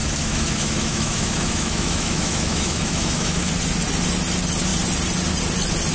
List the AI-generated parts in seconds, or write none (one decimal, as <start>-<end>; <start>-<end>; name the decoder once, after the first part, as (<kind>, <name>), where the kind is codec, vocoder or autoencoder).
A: 0.0-3.5 (autoencoder, DAC-VAE)